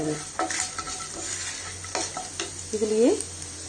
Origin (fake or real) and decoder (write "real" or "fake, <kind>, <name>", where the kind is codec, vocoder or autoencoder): real